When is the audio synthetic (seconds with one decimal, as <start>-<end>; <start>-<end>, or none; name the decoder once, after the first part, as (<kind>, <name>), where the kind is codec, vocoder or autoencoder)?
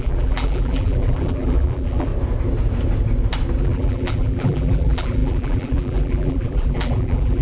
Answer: 0.0-2.1 (vocoder, BigVGAN v2); 3.6-7.4